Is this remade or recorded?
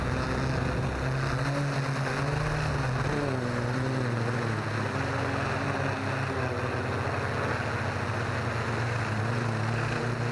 recorded